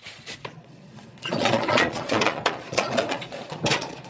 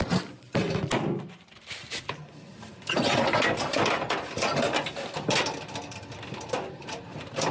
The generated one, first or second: first